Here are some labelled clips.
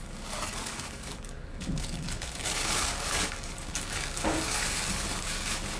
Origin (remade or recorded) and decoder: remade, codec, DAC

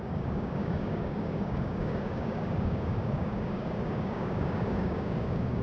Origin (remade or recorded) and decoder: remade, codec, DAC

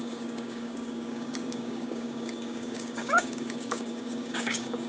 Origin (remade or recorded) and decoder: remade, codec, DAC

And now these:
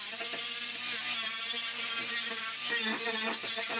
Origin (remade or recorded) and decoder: recorded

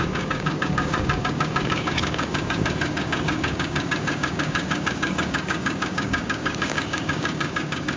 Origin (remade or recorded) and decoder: remade, codec, DAC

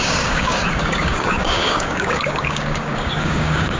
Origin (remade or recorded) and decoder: remade, codec, DAC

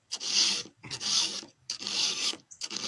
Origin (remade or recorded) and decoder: remade, codec, DAC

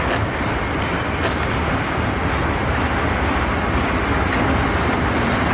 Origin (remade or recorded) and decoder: recorded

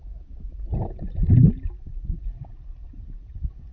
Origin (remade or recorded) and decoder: recorded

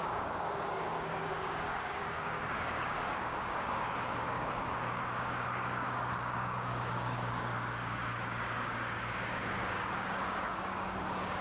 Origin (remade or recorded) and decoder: remade, codec, DAC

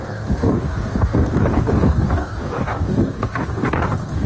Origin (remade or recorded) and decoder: remade, codec, DAC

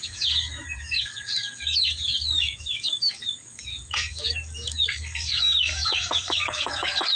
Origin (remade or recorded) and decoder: remade, codec, DAC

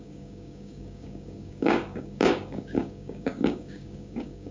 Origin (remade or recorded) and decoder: remade, codec, DAC